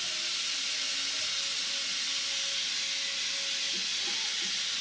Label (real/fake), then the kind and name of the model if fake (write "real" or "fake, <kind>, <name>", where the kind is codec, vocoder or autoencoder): real